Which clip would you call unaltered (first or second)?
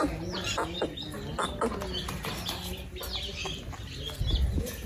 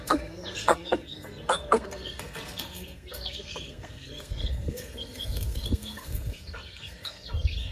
first